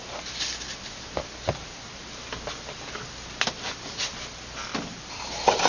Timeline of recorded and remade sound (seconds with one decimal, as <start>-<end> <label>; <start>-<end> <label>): 0.0-5.7 recorded